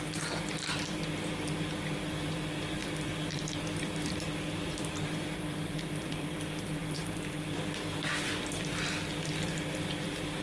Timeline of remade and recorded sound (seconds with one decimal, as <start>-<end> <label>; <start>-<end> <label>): 0.0-10.4 remade